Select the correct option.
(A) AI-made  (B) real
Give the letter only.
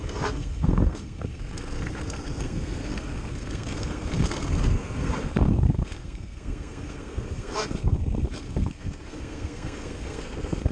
A